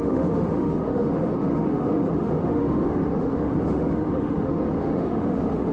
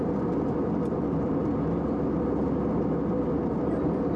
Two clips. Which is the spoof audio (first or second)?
first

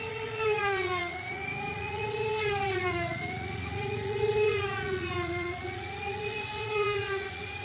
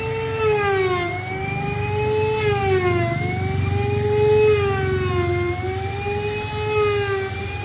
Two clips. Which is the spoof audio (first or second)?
first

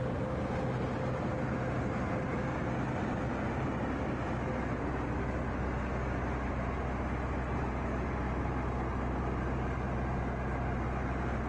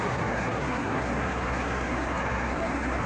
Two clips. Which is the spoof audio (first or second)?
second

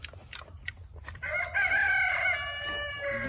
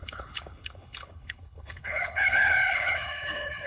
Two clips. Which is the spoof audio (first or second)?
second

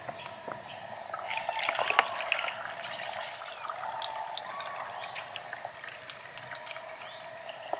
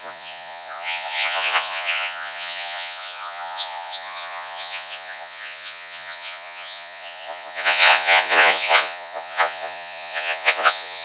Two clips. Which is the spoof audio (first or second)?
second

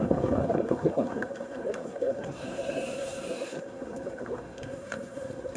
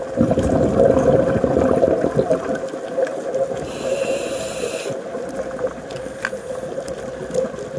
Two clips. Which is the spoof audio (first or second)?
first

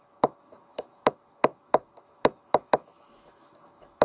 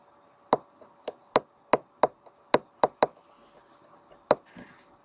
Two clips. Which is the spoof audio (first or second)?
first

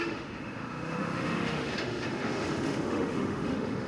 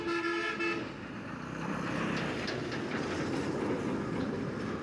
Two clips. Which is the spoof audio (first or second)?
first